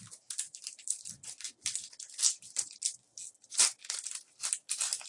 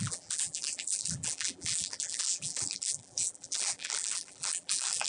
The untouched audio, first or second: first